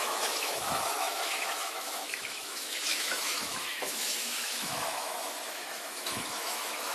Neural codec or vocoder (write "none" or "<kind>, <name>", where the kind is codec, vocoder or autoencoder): autoencoder, DAC-VAE